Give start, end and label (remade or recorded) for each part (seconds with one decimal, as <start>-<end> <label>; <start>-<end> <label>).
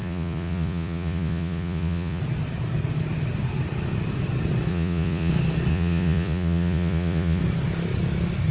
0.0-2.2 remade; 2.2-4.7 recorded; 4.7-5.3 remade; 5.3-5.7 recorded; 5.7-7.4 remade; 7.4-8.5 recorded